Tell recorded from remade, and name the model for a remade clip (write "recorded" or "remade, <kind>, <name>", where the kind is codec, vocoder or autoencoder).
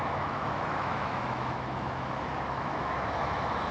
remade, autoencoder, DAC-VAE